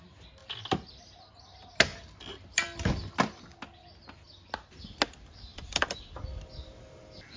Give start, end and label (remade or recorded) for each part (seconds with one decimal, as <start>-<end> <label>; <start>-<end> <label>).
0.0-1.9 recorded; 1.9-3.1 remade; 3.1-5.5 recorded; 5.5-6.4 remade; 6.4-7.4 recorded